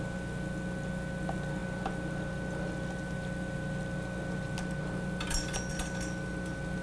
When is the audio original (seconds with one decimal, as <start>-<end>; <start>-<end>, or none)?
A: 0.0-6.8